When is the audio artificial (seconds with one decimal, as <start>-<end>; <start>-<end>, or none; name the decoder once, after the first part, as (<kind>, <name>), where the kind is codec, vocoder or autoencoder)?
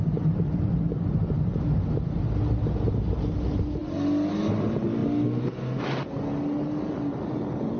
none